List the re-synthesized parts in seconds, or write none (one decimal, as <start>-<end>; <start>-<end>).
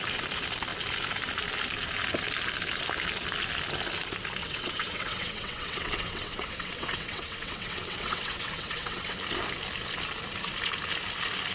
4.4-9.2